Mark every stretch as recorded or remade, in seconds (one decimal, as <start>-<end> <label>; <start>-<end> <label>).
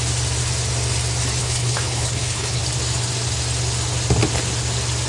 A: 0.0-1.4 recorded; 1.4-2.6 remade; 2.6-5.1 recorded